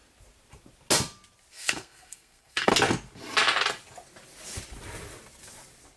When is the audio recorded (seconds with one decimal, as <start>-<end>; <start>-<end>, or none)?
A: 0.0-1.5; 2.7-6.0

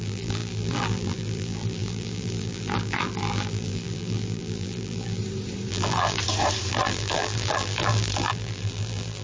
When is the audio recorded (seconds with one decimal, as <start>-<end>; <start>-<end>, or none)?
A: 5.2-5.7; 6.2-6.7

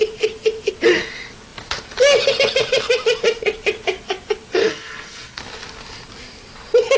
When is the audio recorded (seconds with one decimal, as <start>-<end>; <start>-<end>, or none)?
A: 0.0-4.6; 5.4-7.0

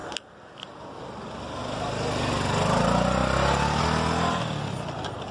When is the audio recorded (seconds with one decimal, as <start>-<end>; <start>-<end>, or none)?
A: 0.0-5.3

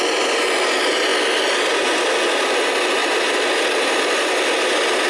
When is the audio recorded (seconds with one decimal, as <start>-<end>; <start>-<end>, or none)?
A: 0.0-5.1

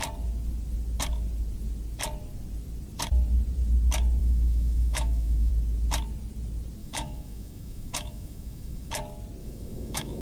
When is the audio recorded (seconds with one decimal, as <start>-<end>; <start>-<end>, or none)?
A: 0.0-4.2; 5.5-6.8; 8.9-9.4